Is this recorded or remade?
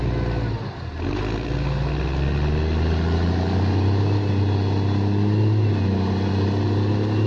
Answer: recorded